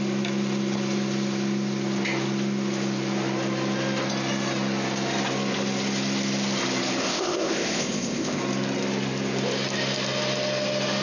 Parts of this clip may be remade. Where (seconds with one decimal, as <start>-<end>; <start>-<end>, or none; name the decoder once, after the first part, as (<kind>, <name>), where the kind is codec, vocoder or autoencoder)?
7.0-8.4 (codec, ZipCodec)